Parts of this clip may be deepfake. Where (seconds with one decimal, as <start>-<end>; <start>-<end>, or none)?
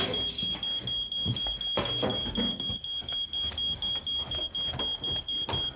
2.1-4.4